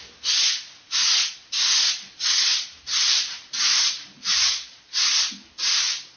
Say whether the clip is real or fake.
real